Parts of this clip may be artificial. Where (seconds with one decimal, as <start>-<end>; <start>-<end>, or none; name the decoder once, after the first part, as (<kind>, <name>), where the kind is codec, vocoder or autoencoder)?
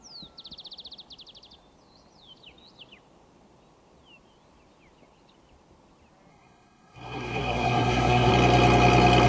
6.3-8.3 (codec, SNAC)